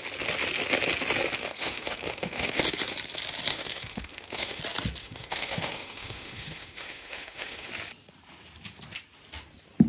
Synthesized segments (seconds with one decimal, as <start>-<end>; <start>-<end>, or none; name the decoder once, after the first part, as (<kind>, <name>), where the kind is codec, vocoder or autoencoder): 1.4-2.6 (autoencoder, DAC-VAE); 3.5-4.6; 5.0-7.7